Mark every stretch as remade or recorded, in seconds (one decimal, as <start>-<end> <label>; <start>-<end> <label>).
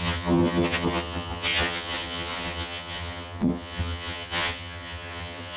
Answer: 0.0-5.6 remade